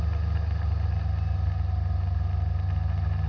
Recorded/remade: recorded